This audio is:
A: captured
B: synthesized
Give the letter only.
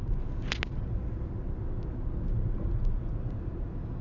A